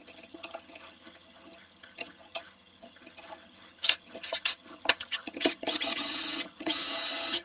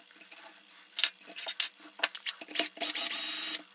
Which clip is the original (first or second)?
second